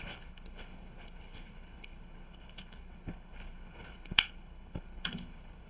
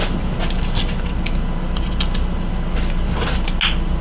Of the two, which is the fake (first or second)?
first